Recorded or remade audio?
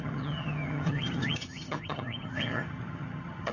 remade